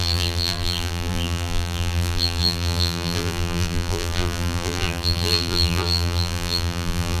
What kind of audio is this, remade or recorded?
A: remade